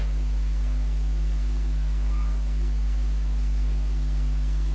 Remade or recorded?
remade